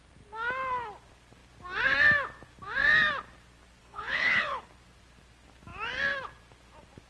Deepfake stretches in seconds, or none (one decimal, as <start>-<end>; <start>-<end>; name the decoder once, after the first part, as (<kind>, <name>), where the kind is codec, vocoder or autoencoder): 3.8-4.6 (codec, HILCodec)